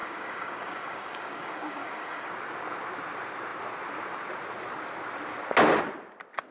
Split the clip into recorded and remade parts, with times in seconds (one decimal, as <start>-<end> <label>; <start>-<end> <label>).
0.0-2.3 remade; 2.3-6.5 recorded